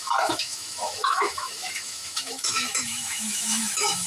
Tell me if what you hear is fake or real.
fake